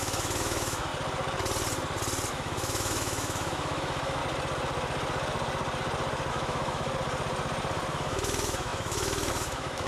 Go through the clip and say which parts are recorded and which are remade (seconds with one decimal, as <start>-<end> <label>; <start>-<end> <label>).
0.0-0.9 remade; 0.9-2.3 recorded; 2.3-4.2 remade; 4.2-6.3 recorded; 6.3-6.9 remade; 6.9-7.9 recorded; 7.9-9.9 remade